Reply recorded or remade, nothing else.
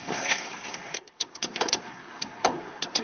remade